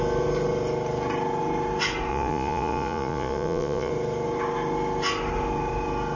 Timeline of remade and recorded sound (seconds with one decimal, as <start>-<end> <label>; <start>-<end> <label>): 0.0-2.1 recorded; 2.1-3.9 remade; 3.9-6.2 recorded